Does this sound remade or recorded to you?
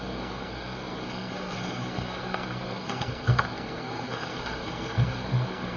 remade